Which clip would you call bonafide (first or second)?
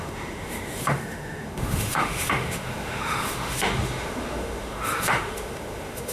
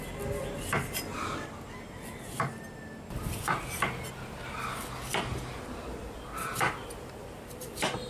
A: second